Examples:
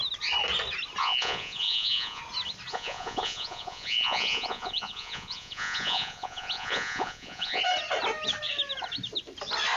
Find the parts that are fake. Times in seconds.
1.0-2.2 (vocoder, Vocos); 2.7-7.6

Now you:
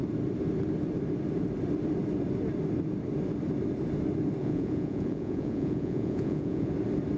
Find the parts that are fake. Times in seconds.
4.4-6.7 (vocoder, Vocos)

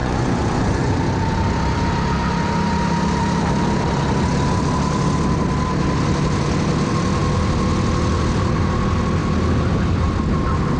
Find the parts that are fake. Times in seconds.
0.0-0.9 (vocoder, Vocos)

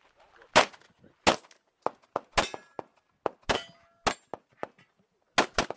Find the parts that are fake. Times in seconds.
none